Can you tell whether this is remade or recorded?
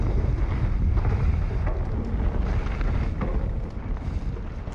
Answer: recorded